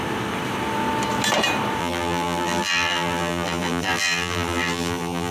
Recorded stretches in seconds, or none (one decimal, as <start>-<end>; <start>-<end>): 0.0-1.8

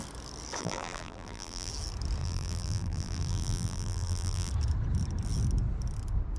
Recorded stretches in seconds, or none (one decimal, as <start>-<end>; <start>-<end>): 0.0-0.6; 1.7-2.2; 4.5-6.4

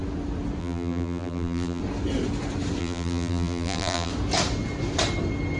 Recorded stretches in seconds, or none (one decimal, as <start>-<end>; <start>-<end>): 0.0-0.6; 1.8-2.8; 4.1-5.6

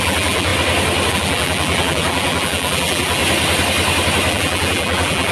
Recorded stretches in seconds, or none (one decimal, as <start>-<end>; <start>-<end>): 0.5-1.1; 3.2-4.3